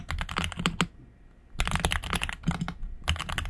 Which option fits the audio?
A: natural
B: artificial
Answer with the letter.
A